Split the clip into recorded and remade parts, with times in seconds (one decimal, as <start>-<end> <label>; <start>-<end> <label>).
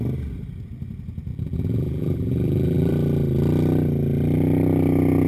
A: 0.0-1.3 recorded; 1.3-2.9 remade; 2.9-5.3 recorded